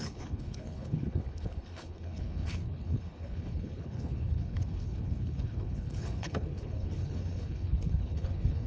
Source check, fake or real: fake